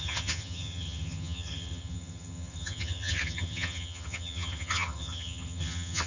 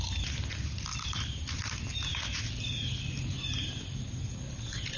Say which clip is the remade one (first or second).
first